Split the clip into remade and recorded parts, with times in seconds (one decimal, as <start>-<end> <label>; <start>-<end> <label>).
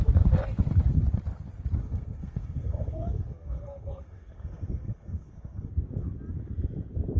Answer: 0.0-1.8 recorded; 1.8-5.7 remade; 5.7-7.2 recorded